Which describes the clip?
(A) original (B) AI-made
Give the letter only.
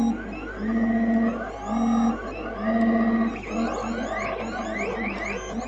A